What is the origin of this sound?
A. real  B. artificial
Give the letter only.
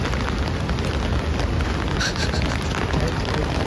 A